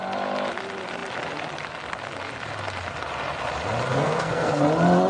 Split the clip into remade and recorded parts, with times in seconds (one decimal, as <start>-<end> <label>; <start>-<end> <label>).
0.0-3.9 recorded; 3.9-4.6 remade; 4.6-5.1 recorded